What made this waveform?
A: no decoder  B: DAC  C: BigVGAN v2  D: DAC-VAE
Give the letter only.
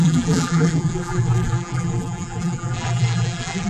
C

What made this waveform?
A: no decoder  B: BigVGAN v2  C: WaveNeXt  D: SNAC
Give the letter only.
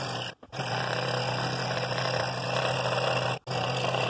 A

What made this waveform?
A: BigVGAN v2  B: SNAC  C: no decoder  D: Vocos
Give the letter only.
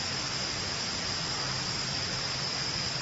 C